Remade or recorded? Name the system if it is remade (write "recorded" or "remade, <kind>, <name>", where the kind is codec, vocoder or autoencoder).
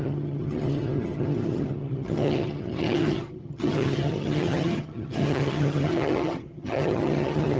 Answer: remade, vocoder, HiFi-GAN